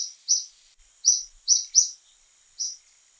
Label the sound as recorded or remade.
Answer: recorded